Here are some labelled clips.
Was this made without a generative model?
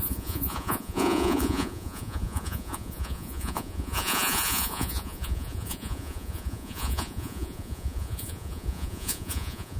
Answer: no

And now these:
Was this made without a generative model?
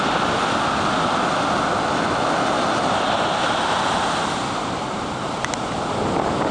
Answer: yes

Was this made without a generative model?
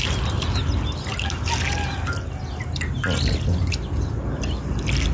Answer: yes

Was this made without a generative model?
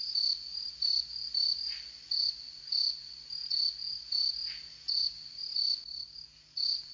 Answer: yes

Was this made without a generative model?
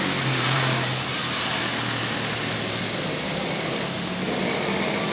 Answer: yes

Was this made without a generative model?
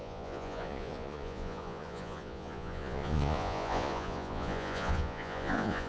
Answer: no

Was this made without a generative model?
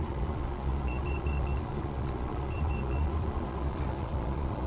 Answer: no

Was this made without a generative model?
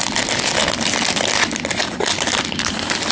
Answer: yes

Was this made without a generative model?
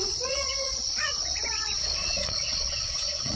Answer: no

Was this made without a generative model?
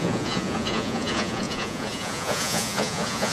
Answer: no